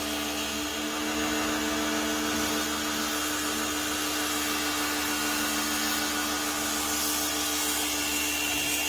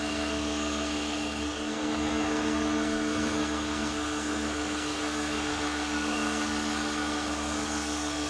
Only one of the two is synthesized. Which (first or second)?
second